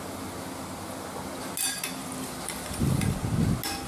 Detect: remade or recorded recorded